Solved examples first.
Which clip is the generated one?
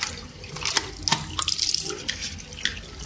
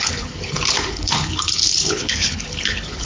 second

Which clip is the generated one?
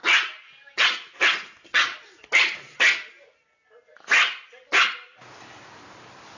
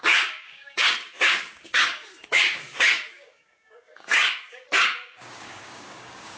second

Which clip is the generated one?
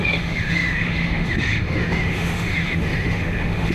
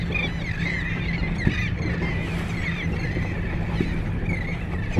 first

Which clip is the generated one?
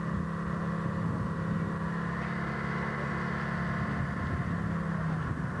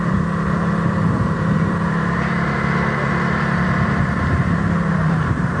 second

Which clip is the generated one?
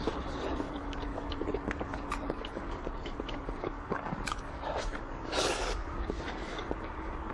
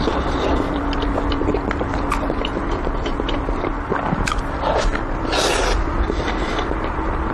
first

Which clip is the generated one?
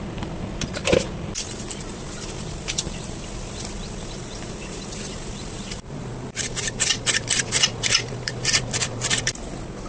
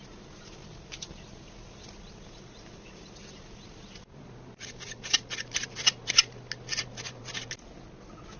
first